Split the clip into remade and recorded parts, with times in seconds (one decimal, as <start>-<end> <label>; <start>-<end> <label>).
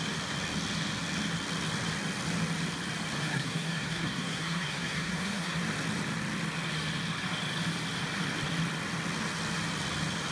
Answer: 0.0-3.2 recorded; 3.2-5.6 remade; 5.6-10.3 recorded